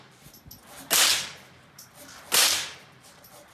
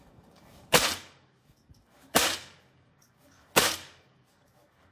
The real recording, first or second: first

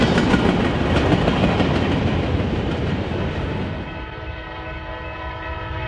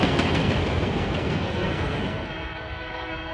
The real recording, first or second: first